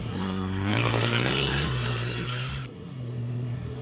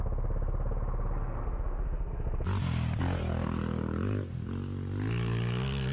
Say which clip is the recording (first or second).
second